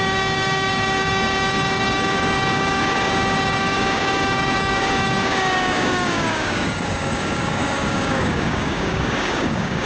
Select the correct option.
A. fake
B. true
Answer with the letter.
A